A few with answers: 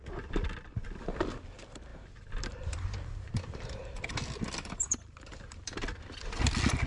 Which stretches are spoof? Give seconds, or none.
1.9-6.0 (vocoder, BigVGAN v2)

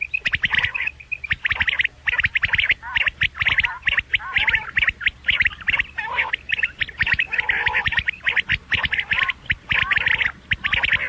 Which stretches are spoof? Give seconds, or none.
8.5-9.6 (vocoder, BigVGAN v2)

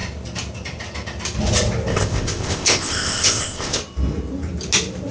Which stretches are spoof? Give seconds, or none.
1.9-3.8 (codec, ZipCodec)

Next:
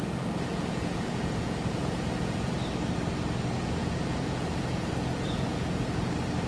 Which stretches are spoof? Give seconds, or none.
0.5-2.5 (vocoder, Vocos); 3.8-6.1